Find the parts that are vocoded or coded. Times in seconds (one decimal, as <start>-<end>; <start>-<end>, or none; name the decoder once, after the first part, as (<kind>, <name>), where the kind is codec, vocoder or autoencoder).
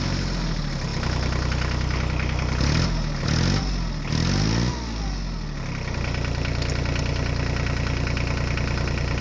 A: none